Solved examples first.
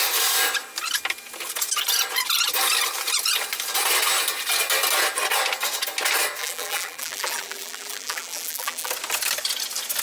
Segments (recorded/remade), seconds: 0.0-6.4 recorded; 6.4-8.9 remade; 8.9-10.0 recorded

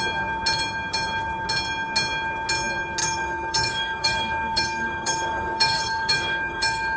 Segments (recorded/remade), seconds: 0.0-3.0 recorded; 3.0-7.0 remade

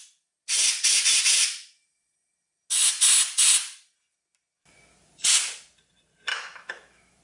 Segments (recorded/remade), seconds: 0.0-6.3 recorded; 6.3-7.2 remade